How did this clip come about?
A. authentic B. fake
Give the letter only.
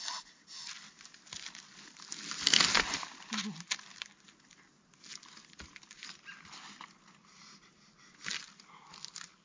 A